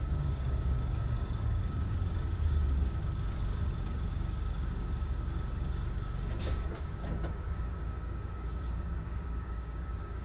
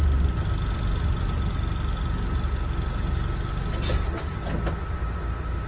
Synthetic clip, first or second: first